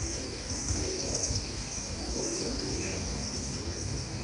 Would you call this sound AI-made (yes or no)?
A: yes